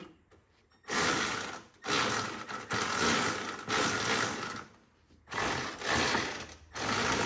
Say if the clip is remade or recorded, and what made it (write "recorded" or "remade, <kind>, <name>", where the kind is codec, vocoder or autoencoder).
recorded